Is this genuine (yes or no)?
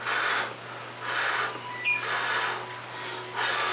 yes